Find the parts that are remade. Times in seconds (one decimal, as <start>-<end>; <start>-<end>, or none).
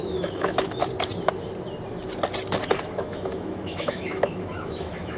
0.0-0.8; 2.8-5.2